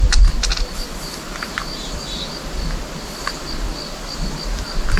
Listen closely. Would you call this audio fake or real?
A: real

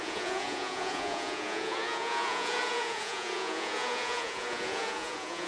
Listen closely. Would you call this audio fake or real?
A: fake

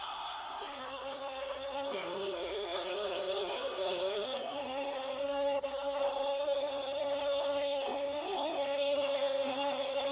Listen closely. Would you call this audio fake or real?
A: fake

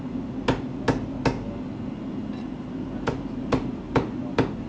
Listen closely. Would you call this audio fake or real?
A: real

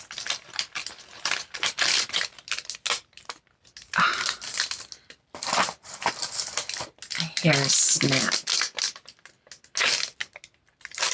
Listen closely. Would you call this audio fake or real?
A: real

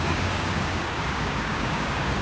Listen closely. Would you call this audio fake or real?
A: fake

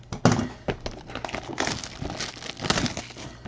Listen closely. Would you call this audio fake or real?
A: real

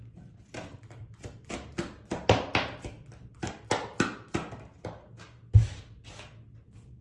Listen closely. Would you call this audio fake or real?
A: real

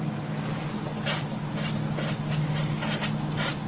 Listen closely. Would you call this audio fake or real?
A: real